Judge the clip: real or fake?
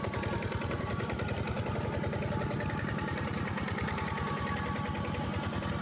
real